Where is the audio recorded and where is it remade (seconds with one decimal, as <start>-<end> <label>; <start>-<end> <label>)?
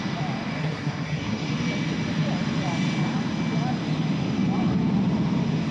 0.0-0.6 recorded; 0.6-1.5 remade; 1.5-5.7 recorded